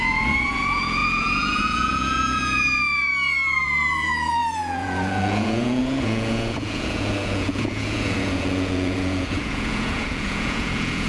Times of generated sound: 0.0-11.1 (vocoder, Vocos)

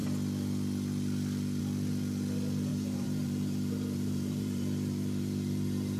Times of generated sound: 2.7-6.0 (vocoder, BigVGAN v2)

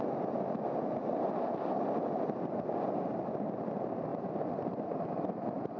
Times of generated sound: none

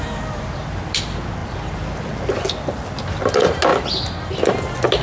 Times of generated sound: none